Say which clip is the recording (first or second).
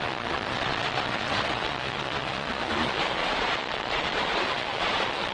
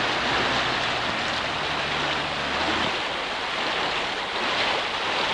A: second